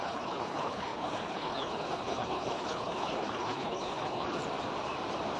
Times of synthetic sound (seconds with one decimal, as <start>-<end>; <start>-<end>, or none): 0.0-4.4